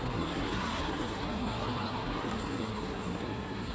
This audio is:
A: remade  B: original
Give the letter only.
A